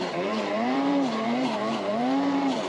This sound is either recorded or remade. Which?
remade